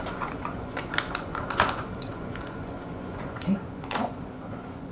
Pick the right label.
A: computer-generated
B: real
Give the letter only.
A